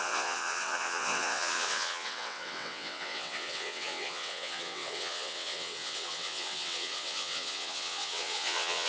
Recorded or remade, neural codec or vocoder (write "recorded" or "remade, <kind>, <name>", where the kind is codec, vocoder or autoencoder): remade, vocoder, WaveNeXt